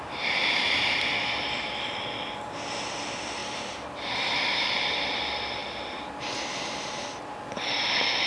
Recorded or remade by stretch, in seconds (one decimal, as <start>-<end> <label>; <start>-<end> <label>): 0.0-3.4 recorded; 3.4-4.9 remade; 4.9-5.6 recorded; 5.6-7.4 remade; 7.4-8.3 recorded